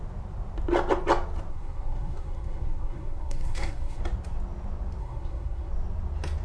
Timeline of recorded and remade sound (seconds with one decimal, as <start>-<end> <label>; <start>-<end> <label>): 0.0-1.5 recorded; 1.5-4.0 remade; 4.0-5.0 recorded; 5.0-5.7 remade; 5.7-6.4 recorded